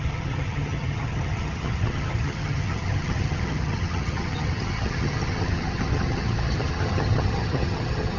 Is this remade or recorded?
remade